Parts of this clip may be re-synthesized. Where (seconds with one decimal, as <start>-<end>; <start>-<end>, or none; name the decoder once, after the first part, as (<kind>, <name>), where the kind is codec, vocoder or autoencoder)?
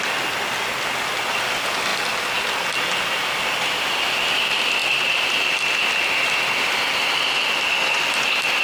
none